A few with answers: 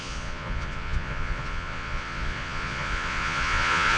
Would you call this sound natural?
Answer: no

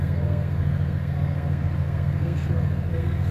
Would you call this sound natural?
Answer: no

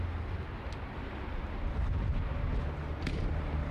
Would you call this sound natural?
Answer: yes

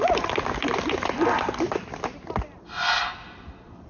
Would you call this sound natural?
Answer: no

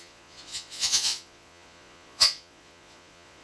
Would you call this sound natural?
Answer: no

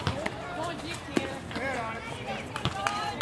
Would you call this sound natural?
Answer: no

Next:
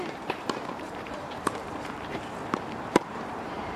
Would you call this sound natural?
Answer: no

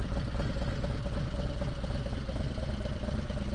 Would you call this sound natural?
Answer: yes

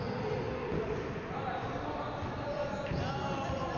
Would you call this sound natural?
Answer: yes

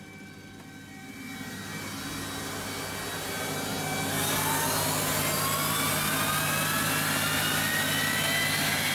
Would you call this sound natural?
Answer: yes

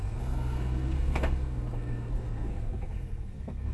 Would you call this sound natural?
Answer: no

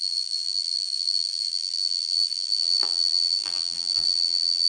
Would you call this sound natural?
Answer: no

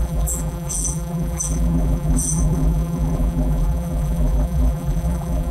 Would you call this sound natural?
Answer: no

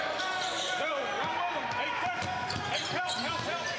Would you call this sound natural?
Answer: yes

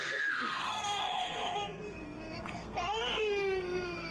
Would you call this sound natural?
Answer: no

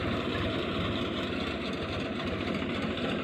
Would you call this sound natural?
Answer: yes